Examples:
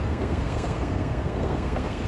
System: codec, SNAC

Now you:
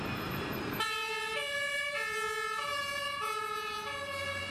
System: none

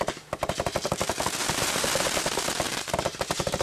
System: none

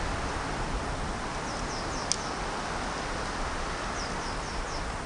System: none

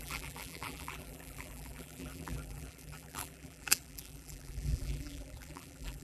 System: vocoder, BigVGAN v2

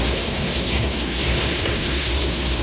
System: codec, SNAC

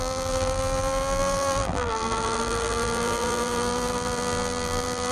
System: vocoder, BigVGAN v2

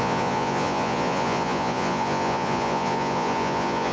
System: vocoder, Vocos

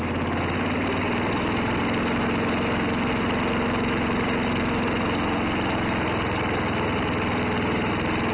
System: none